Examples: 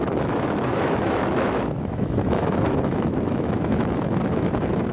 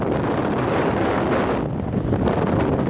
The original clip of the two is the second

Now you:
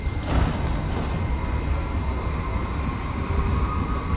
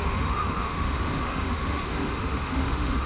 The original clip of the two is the first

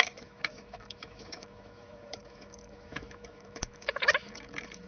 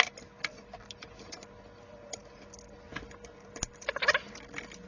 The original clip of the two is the second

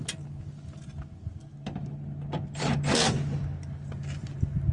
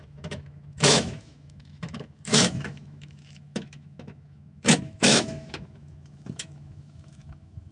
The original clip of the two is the first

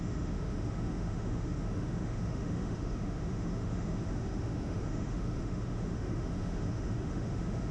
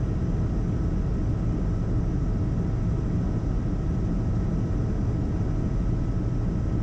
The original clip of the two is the second